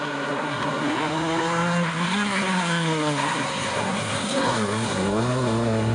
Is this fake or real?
fake